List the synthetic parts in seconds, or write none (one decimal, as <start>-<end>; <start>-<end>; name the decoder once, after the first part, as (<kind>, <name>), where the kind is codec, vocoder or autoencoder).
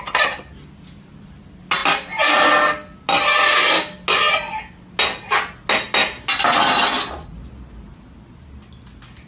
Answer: none